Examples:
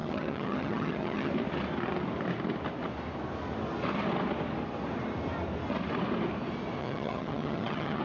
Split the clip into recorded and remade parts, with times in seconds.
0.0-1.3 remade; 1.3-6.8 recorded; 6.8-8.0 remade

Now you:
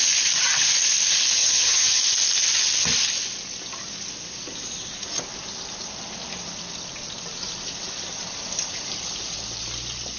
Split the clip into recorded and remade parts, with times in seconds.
0.0-1.4 recorded; 1.4-2.0 remade; 2.0-10.2 recorded

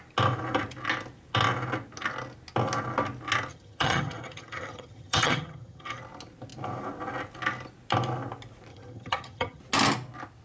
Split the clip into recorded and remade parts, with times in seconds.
0.0-3.5 recorded; 3.5-6.0 remade; 6.0-8.7 recorded; 8.7-9.6 remade; 9.6-10.4 recorded